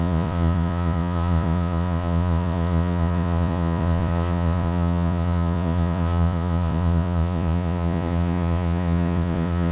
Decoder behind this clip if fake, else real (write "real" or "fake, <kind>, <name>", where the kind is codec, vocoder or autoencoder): fake, vocoder, Vocos